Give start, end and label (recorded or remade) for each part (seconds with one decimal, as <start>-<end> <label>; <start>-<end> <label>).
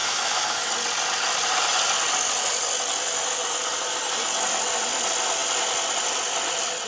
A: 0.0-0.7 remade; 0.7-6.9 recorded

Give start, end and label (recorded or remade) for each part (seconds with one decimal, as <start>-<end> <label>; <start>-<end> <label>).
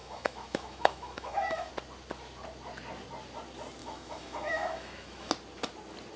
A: 0.0-1.7 remade; 1.7-3.8 recorded; 3.8-5.3 remade; 5.3-6.2 recorded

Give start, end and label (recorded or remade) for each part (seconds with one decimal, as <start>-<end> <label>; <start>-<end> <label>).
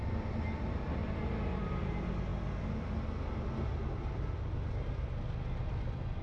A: 0.0-6.2 recorded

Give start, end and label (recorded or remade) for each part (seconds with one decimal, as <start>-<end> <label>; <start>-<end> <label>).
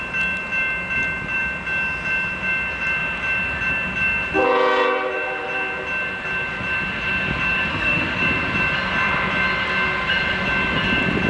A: 0.0-7.7 recorded; 7.7-8.2 remade; 8.2-11.3 recorded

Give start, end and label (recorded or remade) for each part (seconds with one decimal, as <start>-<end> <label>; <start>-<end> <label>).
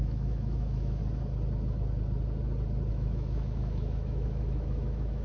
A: 0.0-1.0 remade; 1.0-2.9 recorded; 2.9-5.2 remade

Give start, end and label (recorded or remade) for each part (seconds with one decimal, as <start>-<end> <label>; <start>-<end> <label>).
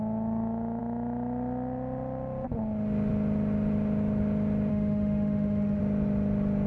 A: 0.0-4.7 recorded; 4.7-5.8 remade; 5.8-6.7 recorded